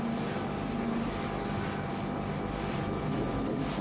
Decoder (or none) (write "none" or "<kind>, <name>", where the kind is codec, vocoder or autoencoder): none